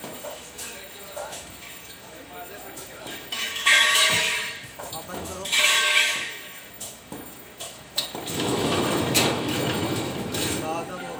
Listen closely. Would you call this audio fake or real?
fake